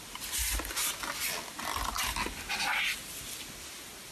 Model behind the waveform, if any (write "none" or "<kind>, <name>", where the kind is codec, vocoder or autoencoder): none